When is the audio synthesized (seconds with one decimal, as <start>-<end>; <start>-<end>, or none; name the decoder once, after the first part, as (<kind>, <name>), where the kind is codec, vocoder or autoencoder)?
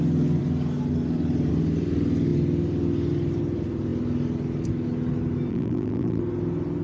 5.5-6.2 (vocoder, BigVGAN v2)